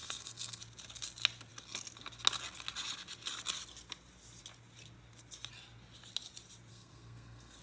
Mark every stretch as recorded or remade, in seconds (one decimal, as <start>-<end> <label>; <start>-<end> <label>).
0.0-0.6 remade; 0.6-6.7 recorded; 6.7-7.6 remade